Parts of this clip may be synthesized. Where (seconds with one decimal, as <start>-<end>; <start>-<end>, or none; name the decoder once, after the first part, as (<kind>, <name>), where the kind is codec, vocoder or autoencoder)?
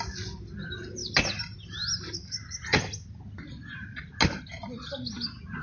none